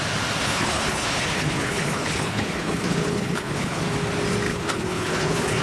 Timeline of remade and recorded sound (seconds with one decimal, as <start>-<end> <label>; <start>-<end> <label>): 0.0-0.4 recorded; 0.4-3.8 remade; 3.8-4.5 recorded; 4.5-5.6 remade